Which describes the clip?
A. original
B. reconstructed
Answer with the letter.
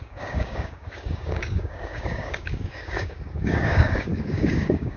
B